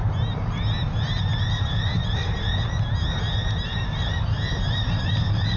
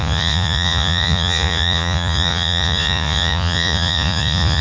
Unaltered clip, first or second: first